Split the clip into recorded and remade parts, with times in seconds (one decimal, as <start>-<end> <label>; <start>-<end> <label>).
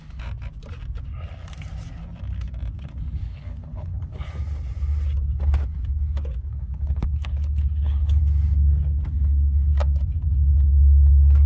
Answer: 0.0-3.2 recorded; 3.2-4.3 remade; 4.3-6.5 recorded; 6.5-8.2 remade; 8.2-11.5 recorded